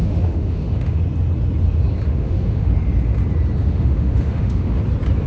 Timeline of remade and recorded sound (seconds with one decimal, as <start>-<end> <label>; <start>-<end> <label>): 0.0-1.0 remade; 1.0-2.1 recorded; 2.1-2.7 remade; 2.7-3.6 recorded; 3.6-4.8 remade; 4.8-5.3 recorded